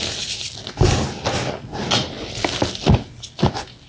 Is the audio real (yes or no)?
yes